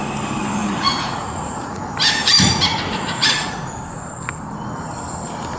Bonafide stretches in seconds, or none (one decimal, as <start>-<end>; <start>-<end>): 0.0-0.6; 1.8-2.2; 3.7-5.6